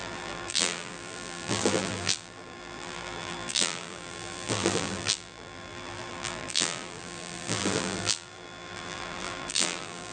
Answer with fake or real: fake